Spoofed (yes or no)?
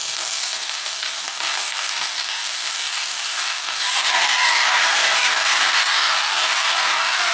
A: yes